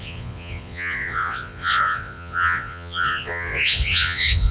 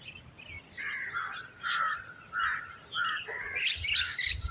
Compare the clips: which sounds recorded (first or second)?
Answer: second